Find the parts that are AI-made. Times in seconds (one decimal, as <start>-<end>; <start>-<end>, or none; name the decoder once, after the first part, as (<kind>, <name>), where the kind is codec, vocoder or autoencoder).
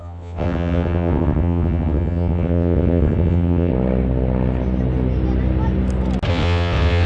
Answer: 0.0-3.7 (vocoder, WaveNeXt); 6.3-7.1